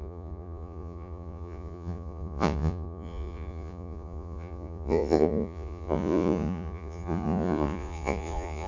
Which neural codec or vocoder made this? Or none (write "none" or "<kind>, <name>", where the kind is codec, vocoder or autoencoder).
vocoder, Vocos